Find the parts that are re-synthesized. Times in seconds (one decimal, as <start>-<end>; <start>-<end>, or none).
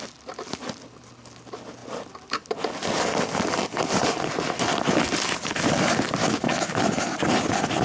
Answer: 6.2-6.8